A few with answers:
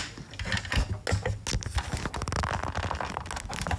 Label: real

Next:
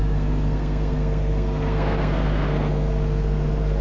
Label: fake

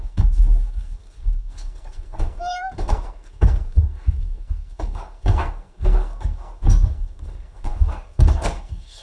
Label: fake